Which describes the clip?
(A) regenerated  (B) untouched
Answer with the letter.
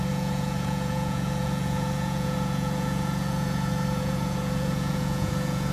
A